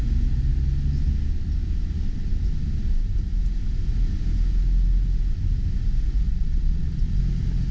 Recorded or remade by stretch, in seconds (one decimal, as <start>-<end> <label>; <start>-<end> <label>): 0.0-6.3 recorded; 6.3-7.2 remade; 7.2-7.7 recorded